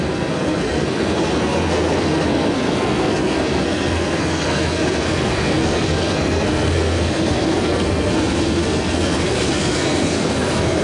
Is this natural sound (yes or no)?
no